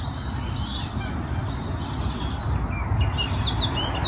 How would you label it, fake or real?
real